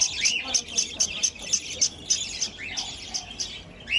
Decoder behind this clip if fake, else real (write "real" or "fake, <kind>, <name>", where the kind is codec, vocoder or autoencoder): real